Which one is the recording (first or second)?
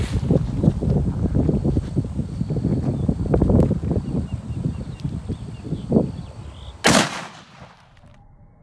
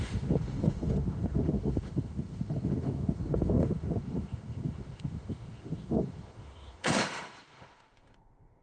first